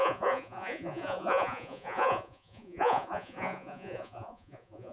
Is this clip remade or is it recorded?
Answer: remade